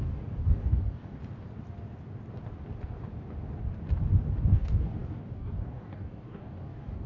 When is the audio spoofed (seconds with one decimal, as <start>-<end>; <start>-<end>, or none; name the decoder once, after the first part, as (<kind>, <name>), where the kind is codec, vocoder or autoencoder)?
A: 0.0-1.2 (codec, DAC); 4.5-7.1